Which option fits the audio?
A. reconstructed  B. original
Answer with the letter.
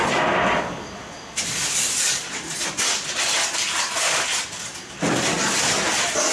B